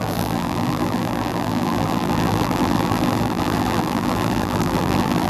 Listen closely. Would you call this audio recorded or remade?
remade